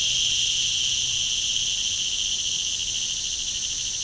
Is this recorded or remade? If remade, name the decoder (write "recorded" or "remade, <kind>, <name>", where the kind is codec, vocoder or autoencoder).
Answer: recorded